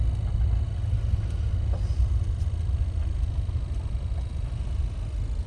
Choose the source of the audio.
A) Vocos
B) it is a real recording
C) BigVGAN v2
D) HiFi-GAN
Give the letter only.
B